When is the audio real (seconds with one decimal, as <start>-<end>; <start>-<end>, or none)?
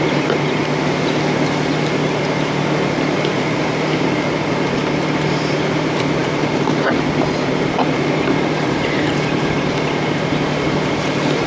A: 0.6-2.2